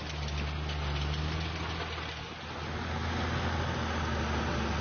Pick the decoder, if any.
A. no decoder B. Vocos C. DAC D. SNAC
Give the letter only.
A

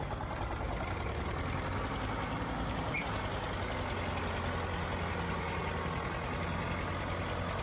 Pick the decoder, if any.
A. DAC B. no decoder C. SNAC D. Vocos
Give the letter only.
B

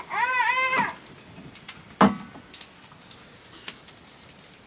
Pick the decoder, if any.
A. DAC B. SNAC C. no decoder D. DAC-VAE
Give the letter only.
C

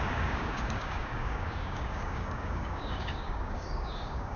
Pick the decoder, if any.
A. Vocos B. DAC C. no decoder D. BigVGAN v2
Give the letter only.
B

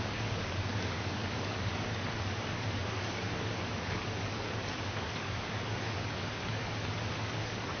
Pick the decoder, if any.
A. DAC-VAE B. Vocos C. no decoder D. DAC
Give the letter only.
D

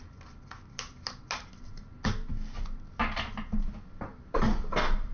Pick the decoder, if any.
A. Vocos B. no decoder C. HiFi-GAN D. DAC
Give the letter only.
B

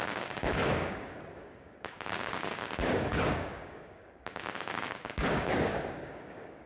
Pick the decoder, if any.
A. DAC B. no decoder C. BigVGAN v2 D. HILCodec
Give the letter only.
A